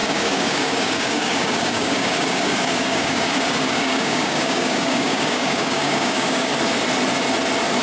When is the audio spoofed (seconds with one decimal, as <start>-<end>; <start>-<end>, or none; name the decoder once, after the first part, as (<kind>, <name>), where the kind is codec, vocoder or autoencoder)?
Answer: 0.0-6.5 (codec, DAC)